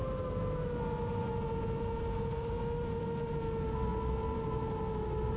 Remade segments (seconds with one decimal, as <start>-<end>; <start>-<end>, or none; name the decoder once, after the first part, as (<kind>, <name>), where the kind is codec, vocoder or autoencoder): none